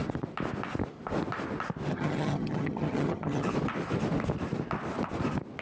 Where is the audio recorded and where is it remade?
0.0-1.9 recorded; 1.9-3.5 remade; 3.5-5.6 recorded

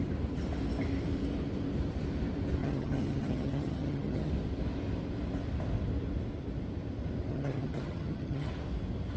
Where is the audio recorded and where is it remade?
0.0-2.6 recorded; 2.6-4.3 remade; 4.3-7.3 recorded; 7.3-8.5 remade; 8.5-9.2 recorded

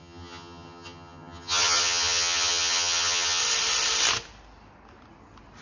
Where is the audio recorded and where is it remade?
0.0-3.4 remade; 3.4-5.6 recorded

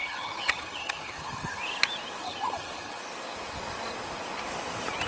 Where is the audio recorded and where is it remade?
0.0-1.6 remade; 1.6-2.2 recorded; 2.2-3.0 remade; 3.0-5.1 recorded

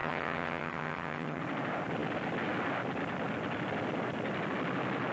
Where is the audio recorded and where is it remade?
0.0-1.4 remade; 1.4-5.1 recorded

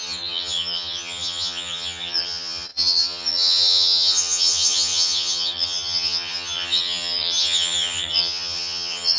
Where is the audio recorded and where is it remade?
0.0-9.2 remade